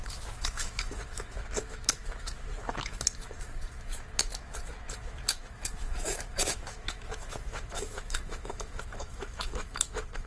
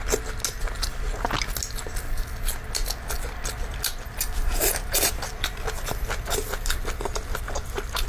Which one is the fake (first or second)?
first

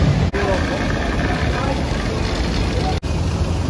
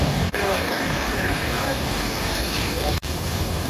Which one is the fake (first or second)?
second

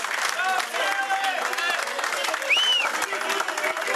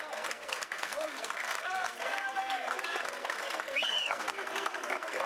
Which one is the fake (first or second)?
second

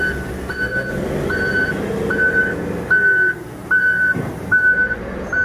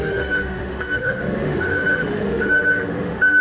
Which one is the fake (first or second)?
second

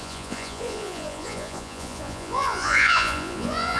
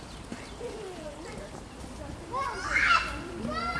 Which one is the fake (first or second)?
first